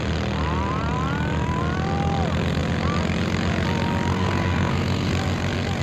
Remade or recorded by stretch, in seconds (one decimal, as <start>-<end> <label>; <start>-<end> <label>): 0.0-4.1 recorded; 4.1-5.1 remade; 5.1-5.8 recorded